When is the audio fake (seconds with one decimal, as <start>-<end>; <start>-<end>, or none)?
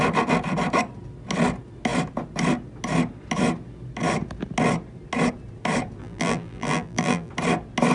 6.0-7.3